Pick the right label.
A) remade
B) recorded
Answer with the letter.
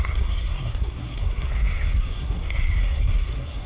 A